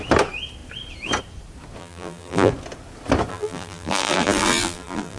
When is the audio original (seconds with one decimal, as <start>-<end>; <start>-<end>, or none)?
0.0-1.8; 2.5-3.3

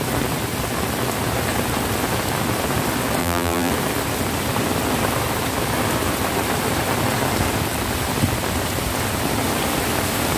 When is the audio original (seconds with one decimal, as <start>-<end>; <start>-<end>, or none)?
0.0-3.2; 3.7-10.4